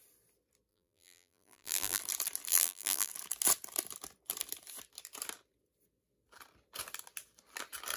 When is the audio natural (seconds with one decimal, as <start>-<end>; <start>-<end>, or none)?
0.0-0.7; 2.0-2.5; 3.1-8.0